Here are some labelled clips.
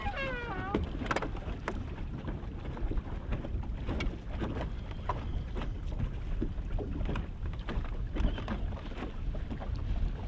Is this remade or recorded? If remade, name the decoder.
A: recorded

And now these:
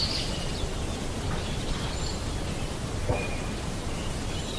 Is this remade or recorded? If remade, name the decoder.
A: recorded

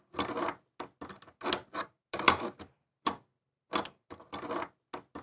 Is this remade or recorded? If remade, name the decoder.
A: recorded